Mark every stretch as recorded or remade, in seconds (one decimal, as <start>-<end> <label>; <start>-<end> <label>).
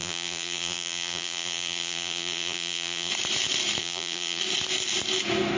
0.0-3.1 remade; 3.1-3.8 recorded; 3.8-4.4 remade; 4.4-5.6 recorded